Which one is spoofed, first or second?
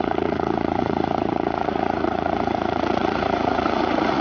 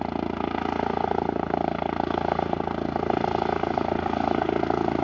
first